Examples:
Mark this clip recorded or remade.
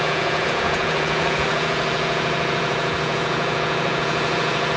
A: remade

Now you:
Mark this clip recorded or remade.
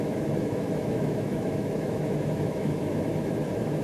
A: remade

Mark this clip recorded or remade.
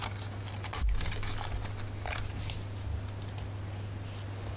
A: recorded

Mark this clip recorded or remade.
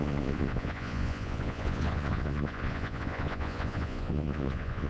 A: remade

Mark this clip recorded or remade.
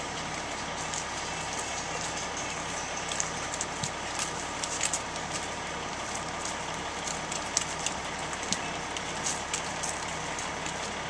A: recorded